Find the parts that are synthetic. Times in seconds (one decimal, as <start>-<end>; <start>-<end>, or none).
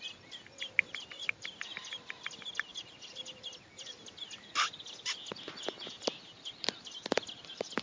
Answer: none